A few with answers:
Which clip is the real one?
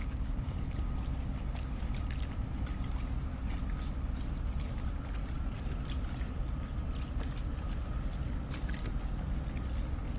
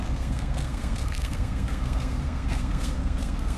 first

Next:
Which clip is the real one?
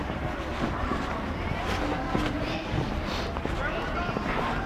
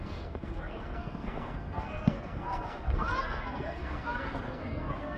first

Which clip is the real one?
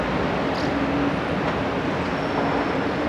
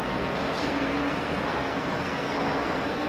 first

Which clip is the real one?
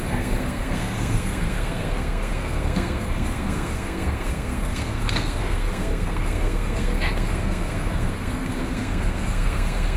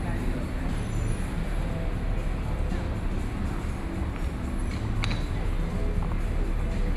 second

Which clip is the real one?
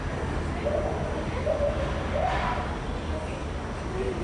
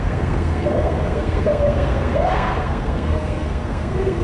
first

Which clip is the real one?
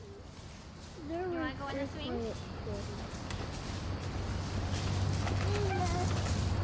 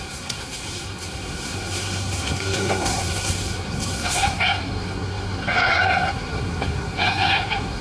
first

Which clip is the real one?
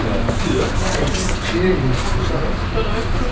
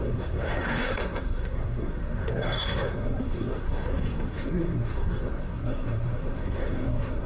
first